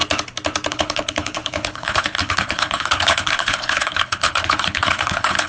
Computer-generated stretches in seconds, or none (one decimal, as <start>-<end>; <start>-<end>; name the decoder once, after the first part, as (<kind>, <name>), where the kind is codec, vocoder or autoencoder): 0.7-5.5 (codec, HILCodec)